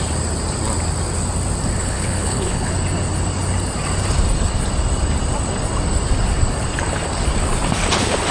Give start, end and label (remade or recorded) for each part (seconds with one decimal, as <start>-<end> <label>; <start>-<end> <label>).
0.0-1.8 recorded; 1.8-2.7 remade; 2.7-8.3 recorded